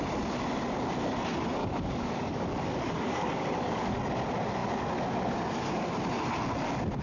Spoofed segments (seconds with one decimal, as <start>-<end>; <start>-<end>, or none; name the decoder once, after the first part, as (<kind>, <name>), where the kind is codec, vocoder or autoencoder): 1.6-4.0 (codec, DAC)